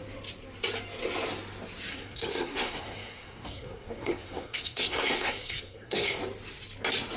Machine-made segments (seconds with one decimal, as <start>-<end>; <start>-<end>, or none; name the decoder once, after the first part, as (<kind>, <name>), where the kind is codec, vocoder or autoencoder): 1.9-6.2 (codec, SNAC)

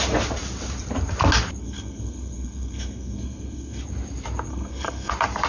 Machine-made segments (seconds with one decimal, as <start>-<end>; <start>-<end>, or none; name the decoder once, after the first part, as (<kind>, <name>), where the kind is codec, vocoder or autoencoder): 1.6-3.8 (codec, SNAC); 4.5-5.1

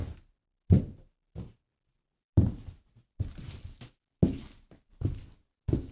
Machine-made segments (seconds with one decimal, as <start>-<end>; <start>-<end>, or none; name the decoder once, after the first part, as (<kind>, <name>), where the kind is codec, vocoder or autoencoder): none

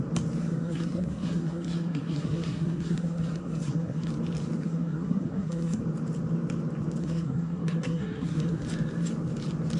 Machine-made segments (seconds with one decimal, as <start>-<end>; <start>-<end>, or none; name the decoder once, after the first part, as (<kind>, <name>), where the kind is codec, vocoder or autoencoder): 0.4-4.1 (codec, SNAC); 4.6-5.8; 7.0-8.6

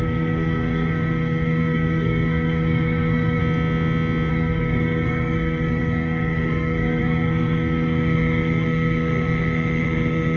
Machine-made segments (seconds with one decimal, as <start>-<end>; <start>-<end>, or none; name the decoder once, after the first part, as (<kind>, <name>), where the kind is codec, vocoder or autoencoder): 0.0-3.4 (codec, SNAC); 4.3-10.4